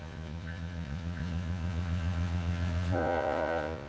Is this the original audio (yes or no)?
no